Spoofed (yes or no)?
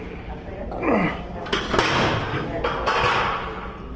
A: no